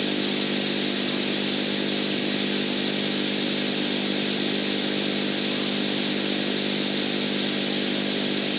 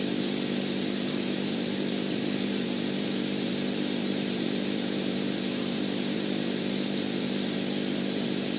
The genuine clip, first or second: first